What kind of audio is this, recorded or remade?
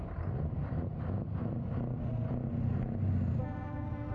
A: recorded